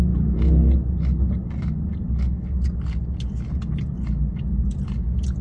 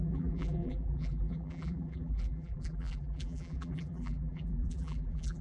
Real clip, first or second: first